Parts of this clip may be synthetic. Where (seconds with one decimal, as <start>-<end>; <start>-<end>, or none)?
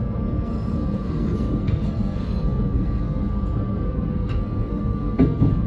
0.0-5.7